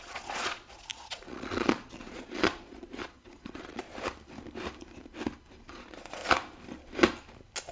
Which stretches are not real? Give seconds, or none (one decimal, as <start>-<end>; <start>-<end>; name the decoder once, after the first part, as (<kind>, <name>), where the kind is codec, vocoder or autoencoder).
0.0-3.9 (vocoder, Vocos); 5.6-6.2